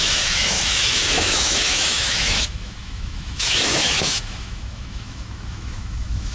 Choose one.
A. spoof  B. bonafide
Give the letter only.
A